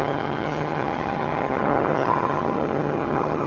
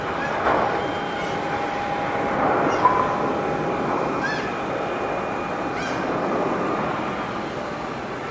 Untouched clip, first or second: second